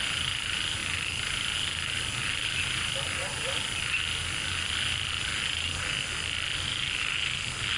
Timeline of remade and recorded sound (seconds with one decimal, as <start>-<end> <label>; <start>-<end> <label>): 0.0-7.8 recorded